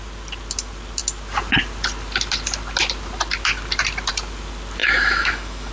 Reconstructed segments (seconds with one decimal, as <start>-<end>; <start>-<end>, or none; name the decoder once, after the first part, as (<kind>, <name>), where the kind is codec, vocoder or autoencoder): 4.8-5.7 (autoencoder, DAC-VAE)